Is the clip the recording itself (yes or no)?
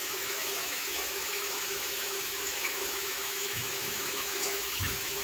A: no